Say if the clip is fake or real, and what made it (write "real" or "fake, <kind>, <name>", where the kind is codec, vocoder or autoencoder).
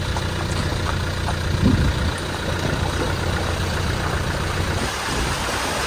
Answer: real